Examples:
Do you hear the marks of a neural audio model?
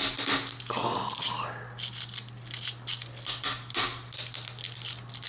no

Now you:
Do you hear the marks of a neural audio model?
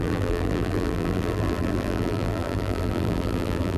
yes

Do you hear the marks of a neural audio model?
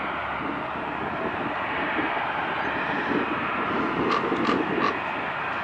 no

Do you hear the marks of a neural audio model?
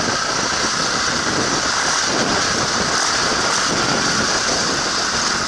yes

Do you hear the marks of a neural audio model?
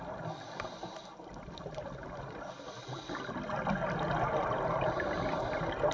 no